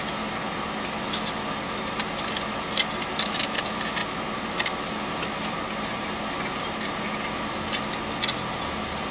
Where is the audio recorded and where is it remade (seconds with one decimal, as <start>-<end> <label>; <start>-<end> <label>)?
0.0-9.1 recorded